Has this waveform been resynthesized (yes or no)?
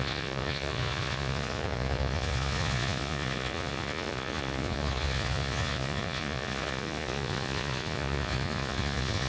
yes